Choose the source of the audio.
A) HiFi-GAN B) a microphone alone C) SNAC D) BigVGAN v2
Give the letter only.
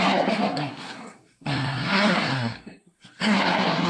C